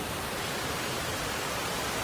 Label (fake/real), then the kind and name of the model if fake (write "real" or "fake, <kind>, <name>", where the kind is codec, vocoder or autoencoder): real